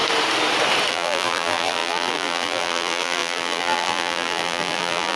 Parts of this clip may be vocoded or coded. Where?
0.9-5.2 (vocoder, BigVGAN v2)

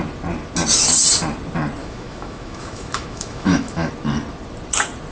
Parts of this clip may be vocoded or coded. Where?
1.8-3.9 (autoencoder, DAC-VAE)

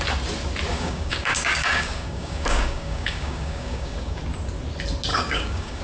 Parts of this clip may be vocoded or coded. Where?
0.7-4.2 (codec, DAC); 5.1-5.8